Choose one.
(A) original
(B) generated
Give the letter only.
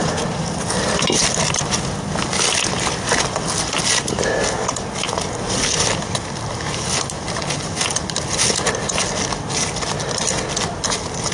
A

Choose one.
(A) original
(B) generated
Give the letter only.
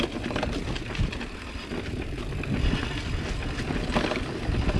A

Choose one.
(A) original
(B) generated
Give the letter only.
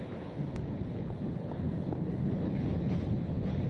B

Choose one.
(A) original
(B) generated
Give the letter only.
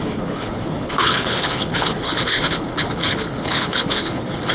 B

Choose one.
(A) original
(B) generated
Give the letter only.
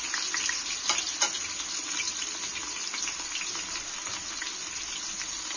A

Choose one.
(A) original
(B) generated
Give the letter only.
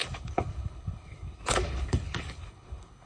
B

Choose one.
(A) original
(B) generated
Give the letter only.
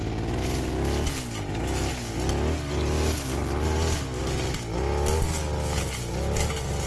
A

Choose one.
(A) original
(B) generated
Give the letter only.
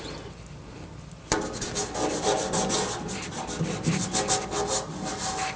A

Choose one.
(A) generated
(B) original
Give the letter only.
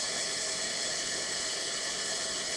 A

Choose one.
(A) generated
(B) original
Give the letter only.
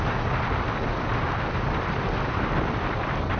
B